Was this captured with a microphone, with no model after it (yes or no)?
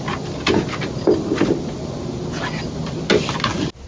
yes